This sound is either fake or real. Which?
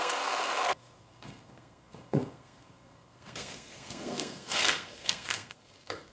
fake